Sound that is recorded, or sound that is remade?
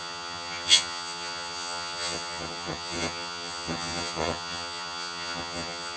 remade